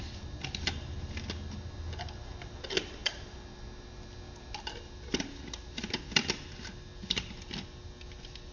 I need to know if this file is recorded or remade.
recorded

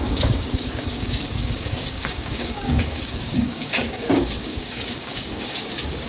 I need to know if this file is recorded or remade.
remade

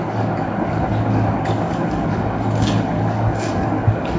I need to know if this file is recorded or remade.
remade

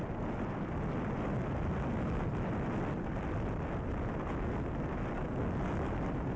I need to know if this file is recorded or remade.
recorded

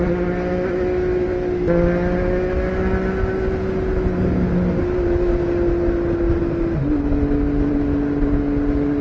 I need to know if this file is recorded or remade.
recorded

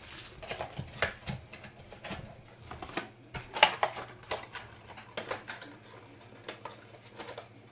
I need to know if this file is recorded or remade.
recorded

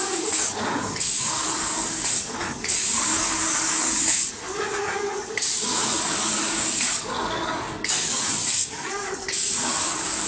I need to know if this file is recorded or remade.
remade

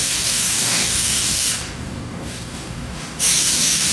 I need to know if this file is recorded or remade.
remade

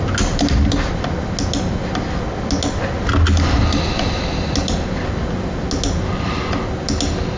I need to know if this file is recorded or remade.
recorded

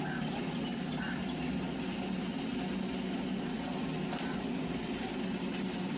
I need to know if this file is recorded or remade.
recorded